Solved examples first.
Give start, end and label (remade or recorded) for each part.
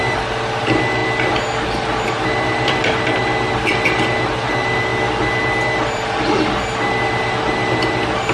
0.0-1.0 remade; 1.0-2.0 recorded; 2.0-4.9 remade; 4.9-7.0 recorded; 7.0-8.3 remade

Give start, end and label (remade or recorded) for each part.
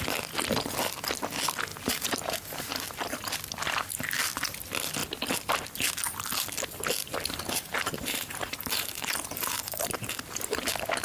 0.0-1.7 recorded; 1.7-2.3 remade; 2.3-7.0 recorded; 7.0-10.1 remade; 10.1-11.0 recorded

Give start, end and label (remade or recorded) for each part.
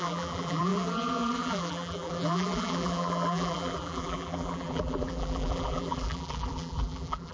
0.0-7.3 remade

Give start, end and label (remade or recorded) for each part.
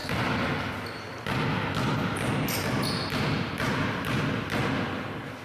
0.0-0.7 remade; 0.7-5.4 recorded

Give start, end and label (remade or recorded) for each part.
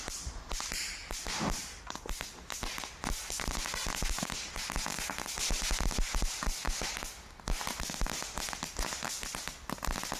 0.0-10.2 recorded